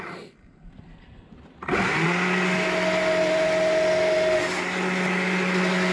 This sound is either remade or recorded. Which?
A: recorded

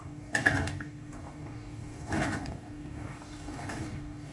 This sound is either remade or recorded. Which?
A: remade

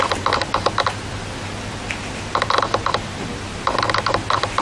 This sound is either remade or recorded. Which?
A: recorded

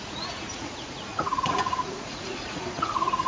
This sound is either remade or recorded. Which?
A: remade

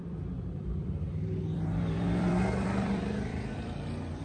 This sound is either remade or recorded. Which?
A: remade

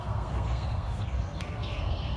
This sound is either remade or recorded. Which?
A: remade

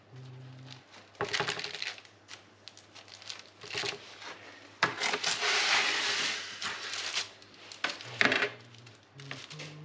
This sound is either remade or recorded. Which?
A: recorded